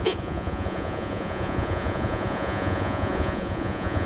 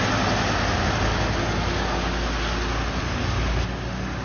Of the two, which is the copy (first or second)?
first